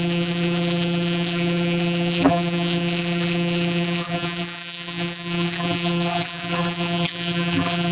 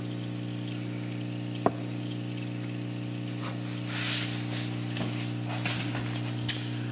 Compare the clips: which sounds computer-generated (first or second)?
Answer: first